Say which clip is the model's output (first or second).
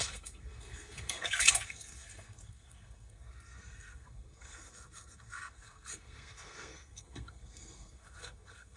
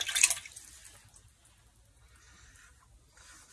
first